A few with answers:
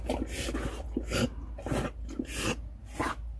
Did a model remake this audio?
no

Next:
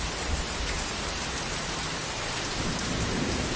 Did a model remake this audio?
yes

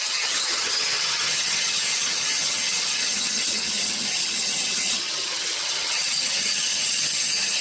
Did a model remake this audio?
yes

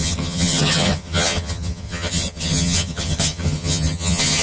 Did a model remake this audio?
yes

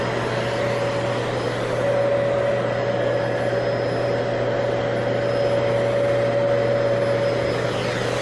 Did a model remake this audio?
no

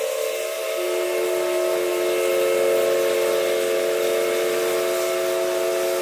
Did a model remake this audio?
no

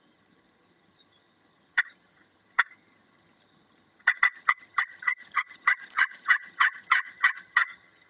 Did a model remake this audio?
yes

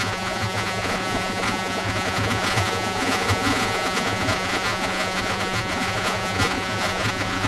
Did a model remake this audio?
yes